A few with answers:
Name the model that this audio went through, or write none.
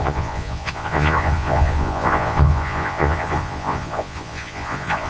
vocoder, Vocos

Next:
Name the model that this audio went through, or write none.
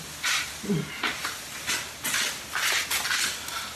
none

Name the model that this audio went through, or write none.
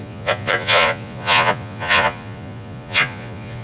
vocoder, Vocos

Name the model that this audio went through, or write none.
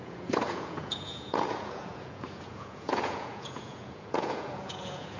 vocoder, Vocos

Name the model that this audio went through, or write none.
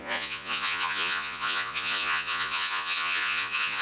vocoder, Vocos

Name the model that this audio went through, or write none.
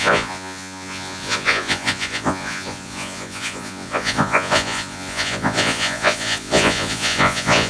vocoder, Vocos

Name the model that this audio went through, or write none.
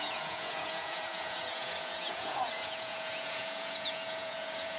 vocoder, Vocos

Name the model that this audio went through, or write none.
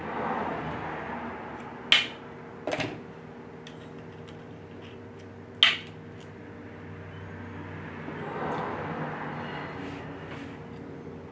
none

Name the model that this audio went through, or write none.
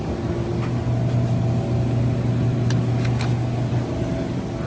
none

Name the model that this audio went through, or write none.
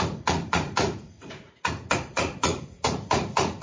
vocoder, Vocos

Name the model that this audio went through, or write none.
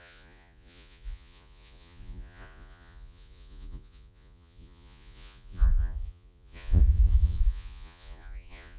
vocoder, Vocos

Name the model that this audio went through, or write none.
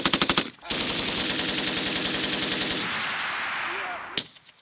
none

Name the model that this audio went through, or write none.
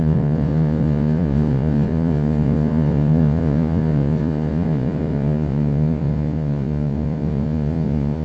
vocoder, Vocos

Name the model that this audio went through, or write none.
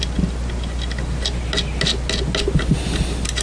none